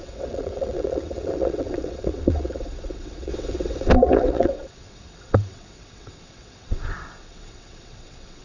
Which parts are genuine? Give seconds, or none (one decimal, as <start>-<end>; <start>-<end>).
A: none